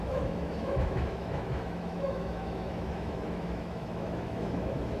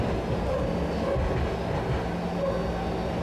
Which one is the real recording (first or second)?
second